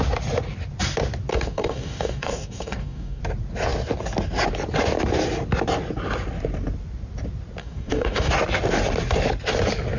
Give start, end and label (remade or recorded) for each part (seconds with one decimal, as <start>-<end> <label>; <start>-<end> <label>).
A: 0.0-1.3 recorded; 1.3-3.2 remade; 3.2-7.6 recorded; 7.6-8.3 remade; 8.3-10.0 recorded